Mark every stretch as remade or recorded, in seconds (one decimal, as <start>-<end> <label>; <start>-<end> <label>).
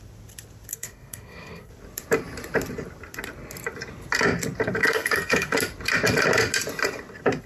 0.0-0.7 recorded; 0.7-1.7 remade; 1.7-4.8 recorded; 4.8-5.5 remade; 5.5-7.5 recorded